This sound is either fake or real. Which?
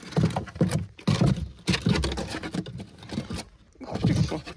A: real